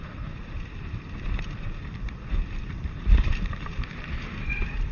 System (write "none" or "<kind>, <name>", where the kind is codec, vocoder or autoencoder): none